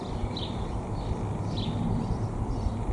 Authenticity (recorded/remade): recorded